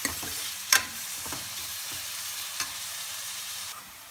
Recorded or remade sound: remade